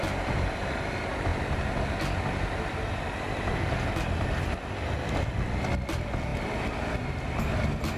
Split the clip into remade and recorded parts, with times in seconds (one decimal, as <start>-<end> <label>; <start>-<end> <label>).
0.0-8.0 recorded